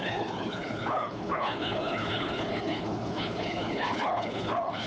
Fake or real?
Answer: fake